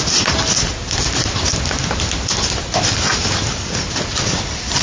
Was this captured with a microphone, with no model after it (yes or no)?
yes